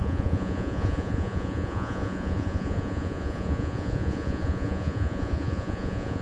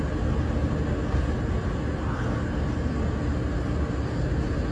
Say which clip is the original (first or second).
second